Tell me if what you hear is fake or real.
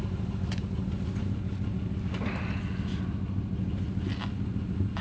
real